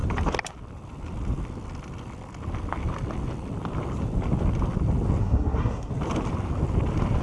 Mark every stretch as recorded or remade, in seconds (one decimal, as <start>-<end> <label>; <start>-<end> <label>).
0.0-5.2 recorded; 5.2-5.9 remade; 5.9-7.2 recorded